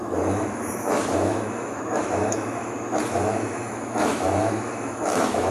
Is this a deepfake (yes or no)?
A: yes